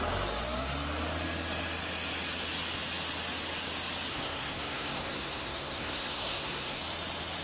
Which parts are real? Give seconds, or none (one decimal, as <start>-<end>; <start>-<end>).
0.0-4.1; 6.8-7.4